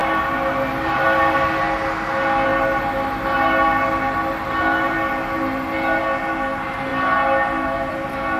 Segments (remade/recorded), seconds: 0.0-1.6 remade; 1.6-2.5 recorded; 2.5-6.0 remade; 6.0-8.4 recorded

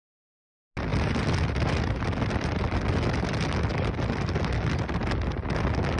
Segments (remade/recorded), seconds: 0.0-3.7 recorded; 3.7-4.4 remade; 4.4-6.0 recorded

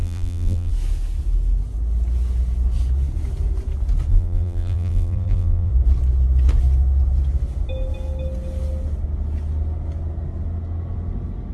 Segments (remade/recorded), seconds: 0.0-0.7 remade; 0.7-4.1 recorded; 4.1-5.7 remade; 5.7-11.5 recorded

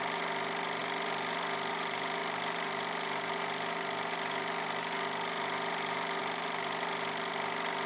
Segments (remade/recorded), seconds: 0.0-0.8 recorded; 0.8-1.7 remade; 1.7-7.9 recorded

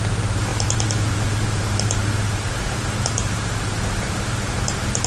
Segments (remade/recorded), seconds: 0.0-5.1 remade

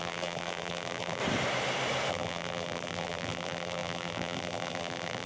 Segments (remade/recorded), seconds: 0.0-1.2 remade; 1.2-2.1 recorded; 2.1-5.3 remade

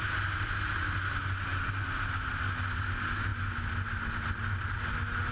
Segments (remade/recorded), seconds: 0.0-5.3 recorded